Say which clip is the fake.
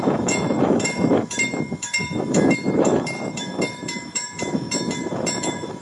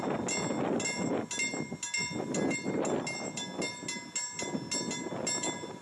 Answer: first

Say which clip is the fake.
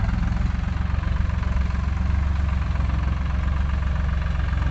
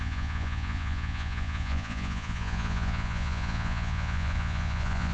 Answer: second